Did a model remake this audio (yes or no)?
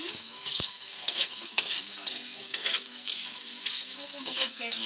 yes